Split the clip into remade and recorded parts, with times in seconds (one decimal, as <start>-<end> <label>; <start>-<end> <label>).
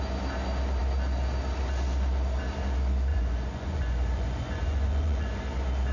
0.0-3.1 recorded; 3.1-5.4 remade; 5.4-5.9 recorded